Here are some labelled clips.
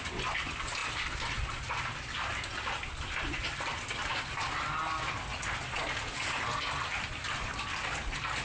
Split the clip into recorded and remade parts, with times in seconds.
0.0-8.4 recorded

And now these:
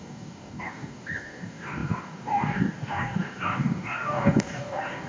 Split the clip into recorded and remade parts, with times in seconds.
0.0-5.1 remade

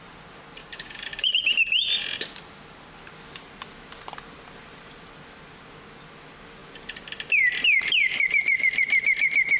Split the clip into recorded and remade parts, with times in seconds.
0.0-0.6 recorded; 0.6-1.3 remade; 1.3-9.6 recorded